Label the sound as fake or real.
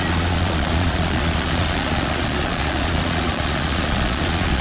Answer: fake